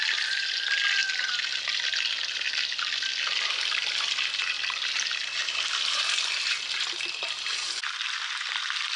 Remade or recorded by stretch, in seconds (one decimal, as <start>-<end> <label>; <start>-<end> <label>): 0.0-9.0 recorded